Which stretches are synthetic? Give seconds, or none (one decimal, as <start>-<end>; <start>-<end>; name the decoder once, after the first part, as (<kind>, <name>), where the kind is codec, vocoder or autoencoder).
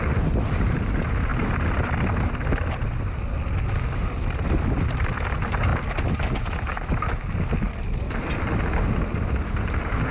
none